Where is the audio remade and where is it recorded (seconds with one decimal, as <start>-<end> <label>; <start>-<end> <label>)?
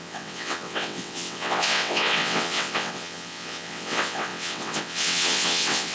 0.0-5.9 remade